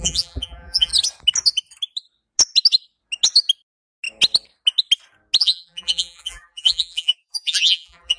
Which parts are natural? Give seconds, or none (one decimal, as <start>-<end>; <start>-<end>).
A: 0.9-5.4